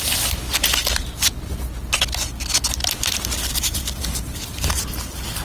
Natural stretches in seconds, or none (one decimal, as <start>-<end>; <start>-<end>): 0.0-5.4